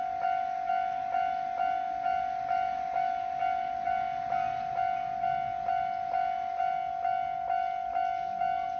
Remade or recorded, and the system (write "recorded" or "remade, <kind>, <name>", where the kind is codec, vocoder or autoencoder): recorded